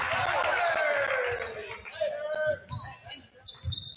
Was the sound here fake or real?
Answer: real